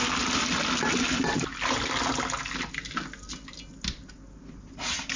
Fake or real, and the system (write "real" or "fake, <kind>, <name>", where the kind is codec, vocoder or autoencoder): real